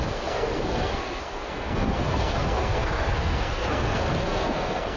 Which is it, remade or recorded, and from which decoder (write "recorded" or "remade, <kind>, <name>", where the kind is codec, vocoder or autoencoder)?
remade, codec, SNAC